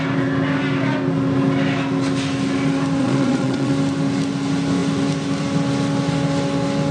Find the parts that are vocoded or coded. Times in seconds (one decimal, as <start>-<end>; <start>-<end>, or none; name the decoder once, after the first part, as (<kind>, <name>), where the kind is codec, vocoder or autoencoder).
3.0-3.7 (vocoder, Vocos)